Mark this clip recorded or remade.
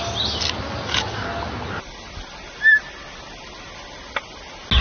recorded